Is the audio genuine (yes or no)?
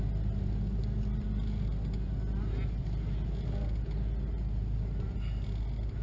yes